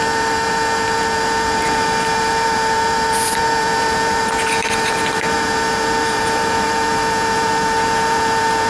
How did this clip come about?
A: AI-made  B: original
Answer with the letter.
A